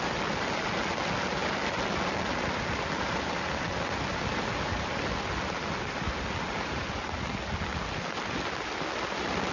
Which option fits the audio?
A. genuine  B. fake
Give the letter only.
A